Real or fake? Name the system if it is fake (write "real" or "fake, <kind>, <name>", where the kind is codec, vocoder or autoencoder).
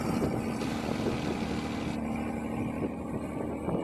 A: real